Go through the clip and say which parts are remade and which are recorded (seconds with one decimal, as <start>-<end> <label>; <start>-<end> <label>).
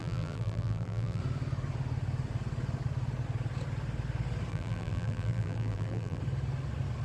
0.0-1.2 remade; 1.2-4.5 recorded; 4.5-6.2 remade; 6.2-7.0 recorded